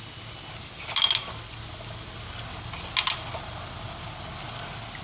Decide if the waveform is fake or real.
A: real